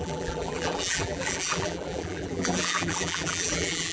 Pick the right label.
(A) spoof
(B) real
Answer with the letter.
A